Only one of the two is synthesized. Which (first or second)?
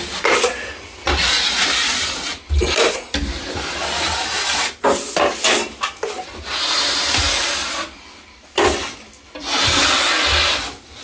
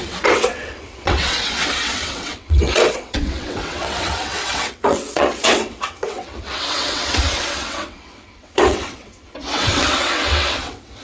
second